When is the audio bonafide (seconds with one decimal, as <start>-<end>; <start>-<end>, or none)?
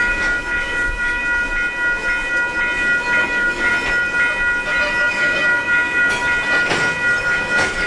1.2-3.2; 3.7-5.1; 6.0-7.2